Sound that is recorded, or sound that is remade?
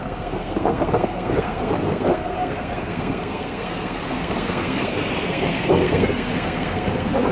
remade